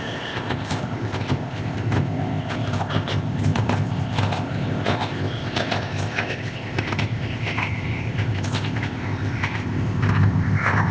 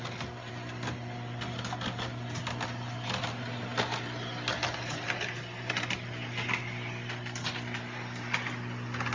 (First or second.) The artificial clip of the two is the first